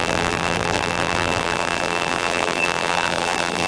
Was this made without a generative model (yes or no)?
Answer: no